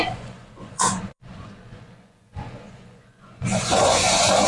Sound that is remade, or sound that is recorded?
remade